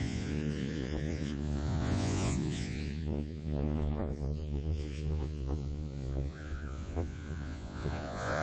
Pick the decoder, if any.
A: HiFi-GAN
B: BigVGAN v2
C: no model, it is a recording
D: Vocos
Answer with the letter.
D